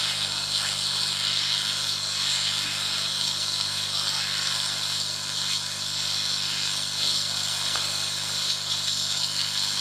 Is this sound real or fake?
fake